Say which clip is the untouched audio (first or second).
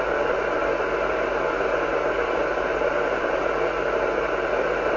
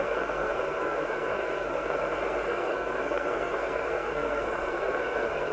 first